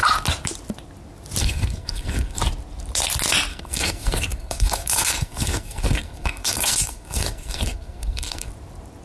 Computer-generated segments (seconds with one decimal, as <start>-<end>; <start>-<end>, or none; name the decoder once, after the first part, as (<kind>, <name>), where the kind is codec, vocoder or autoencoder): 1.4-2.4 (codec, SNAC); 3.5-8.5